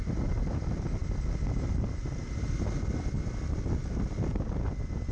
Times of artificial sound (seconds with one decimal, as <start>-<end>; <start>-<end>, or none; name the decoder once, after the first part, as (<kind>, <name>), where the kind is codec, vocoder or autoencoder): none